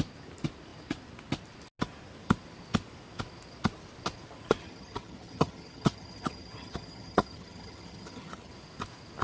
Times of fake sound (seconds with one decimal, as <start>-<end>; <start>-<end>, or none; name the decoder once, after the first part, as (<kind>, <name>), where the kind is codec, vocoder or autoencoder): 4.6-8.5 (vocoder, HiFi-GAN)